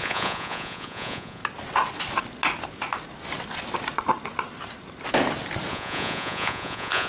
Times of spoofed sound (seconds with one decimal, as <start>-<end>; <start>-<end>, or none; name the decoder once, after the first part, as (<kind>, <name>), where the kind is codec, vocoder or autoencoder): 0.0-1.4 (vocoder, Vocos); 5.7-7.1